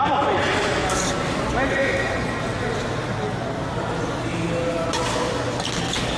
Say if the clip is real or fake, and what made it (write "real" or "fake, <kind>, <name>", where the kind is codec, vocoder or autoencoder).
real